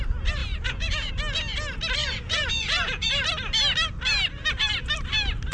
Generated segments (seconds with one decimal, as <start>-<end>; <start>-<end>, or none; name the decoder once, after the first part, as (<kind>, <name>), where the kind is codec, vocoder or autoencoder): 0.4-1.1 (vocoder, Vocos); 2.0-3.1